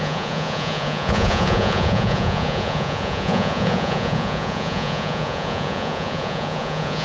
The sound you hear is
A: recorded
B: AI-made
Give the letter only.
B